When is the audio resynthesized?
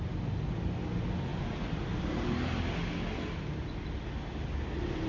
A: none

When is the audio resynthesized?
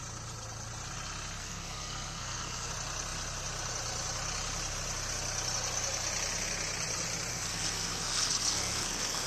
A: 1.4-2.7 (codec, SNAC); 7.3-9.3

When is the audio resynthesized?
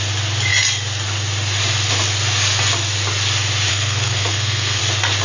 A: 3.7-4.8 (codec, SNAC)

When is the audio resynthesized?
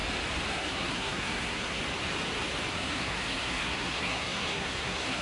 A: 0.5-1.8 (codec, SNAC); 2.7-5.2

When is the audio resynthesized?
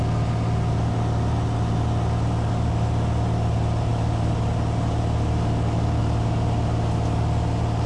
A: none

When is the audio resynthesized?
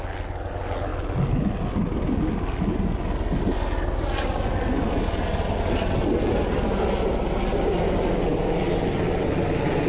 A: none